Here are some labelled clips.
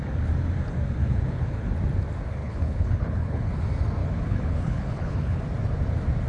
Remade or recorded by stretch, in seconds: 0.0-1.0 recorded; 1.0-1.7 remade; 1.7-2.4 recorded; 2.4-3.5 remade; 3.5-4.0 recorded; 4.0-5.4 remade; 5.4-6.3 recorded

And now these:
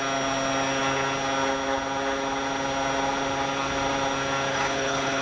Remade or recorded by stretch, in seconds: 0.0-4.5 recorded; 4.5-5.2 remade

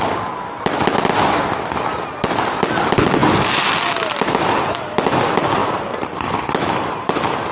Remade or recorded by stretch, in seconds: 0.0-7.5 recorded

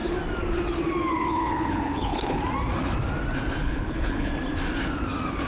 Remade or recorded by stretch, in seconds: 0.0-1.1 recorded; 1.1-2.4 remade; 2.4-3.6 recorded; 3.6-4.3 remade; 4.3-5.5 recorded

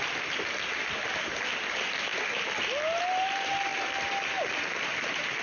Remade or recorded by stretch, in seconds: 0.0-5.4 recorded

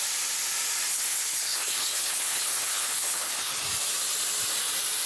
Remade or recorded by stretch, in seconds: 0.0-0.9 recorded; 0.9-3.6 remade; 3.6-5.1 recorded

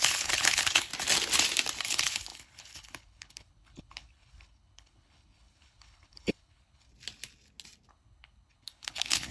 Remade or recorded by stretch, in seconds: 0.0-0.9 remade; 0.9-1.8 recorded; 1.8-6.9 remade; 6.9-7.9 recorded; 7.9-9.3 remade

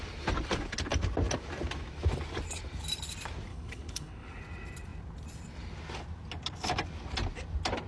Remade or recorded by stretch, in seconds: 0.0-3.5 recorded; 3.5-4.4 remade; 4.4-7.9 recorded